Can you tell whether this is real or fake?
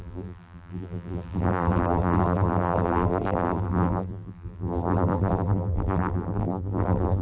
fake